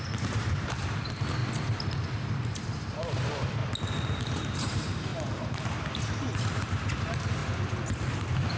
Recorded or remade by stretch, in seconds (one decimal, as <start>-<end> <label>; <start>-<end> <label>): 0.0-1.4 remade; 1.4-2.1 recorded; 2.1-3.6 remade; 3.6-4.1 recorded; 4.1-5.1 remade; 5.1-6.5 recorded; 6.5-7.4 remade; 7.4-8.6 recorded